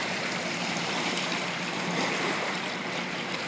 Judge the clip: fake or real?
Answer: fake